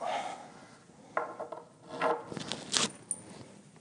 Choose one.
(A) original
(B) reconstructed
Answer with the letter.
A